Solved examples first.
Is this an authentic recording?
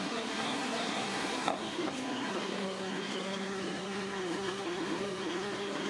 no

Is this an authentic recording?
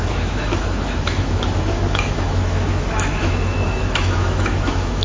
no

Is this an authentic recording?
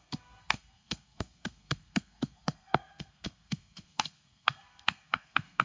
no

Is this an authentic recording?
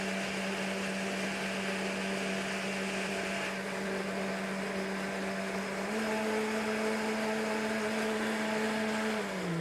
yes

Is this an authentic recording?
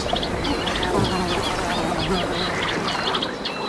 yes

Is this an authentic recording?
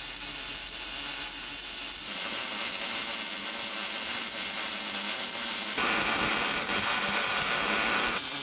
yes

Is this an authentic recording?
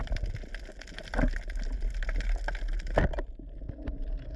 yes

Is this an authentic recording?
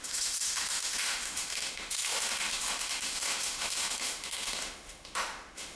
no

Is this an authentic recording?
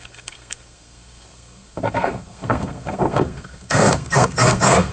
no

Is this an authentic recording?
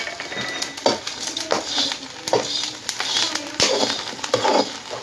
yes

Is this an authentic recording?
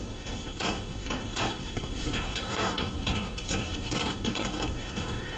no